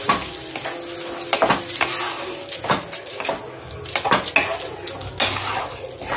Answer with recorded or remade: recorded